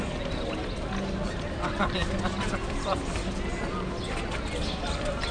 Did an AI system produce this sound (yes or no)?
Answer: no